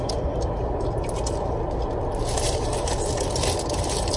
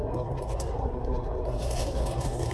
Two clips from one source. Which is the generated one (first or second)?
second